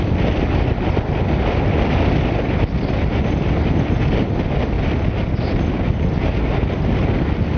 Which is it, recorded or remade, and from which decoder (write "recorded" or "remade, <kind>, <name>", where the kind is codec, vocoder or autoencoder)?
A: recorded